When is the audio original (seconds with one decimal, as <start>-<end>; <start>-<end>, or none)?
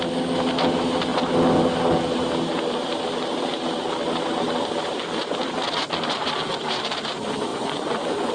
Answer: 0.0-7.5